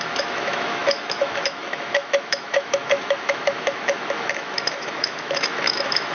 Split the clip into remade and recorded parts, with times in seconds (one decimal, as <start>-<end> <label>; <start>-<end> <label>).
0.0-6.1 remade